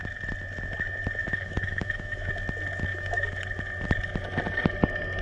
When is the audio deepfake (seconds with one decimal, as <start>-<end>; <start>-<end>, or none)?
1.2-2.3; 2.9-3.4